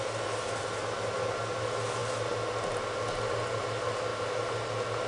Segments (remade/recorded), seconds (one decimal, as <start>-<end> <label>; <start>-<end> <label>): 0.0-5.1 recorded